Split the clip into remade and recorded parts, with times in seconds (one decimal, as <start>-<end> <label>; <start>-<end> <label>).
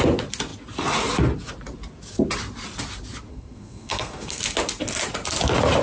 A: 0.0-3.3 recorded; 3.3-4.4 remade; 4.4-5.8 recorded